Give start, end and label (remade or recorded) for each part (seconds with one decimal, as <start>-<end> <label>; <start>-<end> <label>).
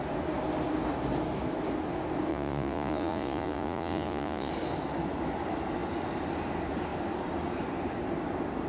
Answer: 0.0-2.3 recorded; 2.3-4.5 remade; 4.5-8.7 recorded